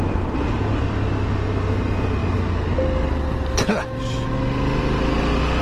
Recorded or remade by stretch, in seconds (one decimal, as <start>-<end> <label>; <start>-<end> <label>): 0.0-5.6 recorded